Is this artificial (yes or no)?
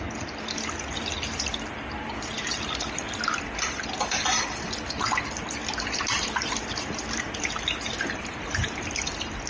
no